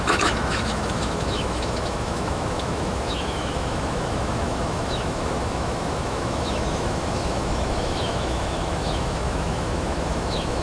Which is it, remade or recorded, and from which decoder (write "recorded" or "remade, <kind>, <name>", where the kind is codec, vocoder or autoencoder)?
remade, autoencoder, DAC-VAE